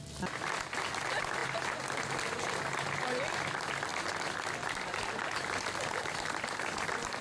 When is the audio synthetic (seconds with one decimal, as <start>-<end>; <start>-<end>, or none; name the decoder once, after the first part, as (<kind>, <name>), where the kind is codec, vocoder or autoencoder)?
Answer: 3.9-4.9 (vocoder, BigVGAN v2)